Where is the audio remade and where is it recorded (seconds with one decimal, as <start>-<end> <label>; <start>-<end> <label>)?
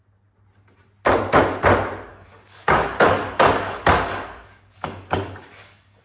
0.0-2.1 recorded; 2.1-6.0 remade